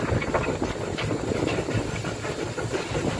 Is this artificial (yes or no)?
no